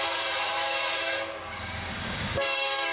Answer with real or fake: fake